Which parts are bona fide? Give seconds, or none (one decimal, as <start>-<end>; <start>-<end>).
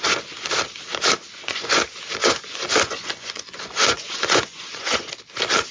0.0-1.3; 1.8-2.2; 5.1-5.7